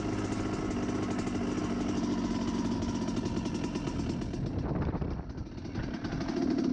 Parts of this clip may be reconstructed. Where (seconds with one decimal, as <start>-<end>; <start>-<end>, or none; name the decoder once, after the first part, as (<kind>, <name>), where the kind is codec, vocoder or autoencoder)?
none